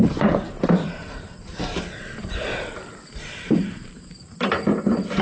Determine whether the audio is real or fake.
fake